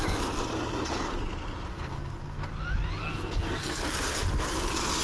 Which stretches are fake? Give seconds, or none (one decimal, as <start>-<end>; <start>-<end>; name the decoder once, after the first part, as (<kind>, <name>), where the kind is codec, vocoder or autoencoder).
1.7-2.5 (codec, SNAC); 3.0-3.8

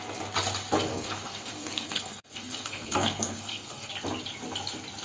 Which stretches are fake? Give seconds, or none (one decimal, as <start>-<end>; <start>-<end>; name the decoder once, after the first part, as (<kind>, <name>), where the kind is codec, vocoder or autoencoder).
0.9-3.9 (codec, SNAC)